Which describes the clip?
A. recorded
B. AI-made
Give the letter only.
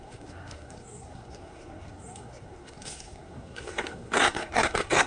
B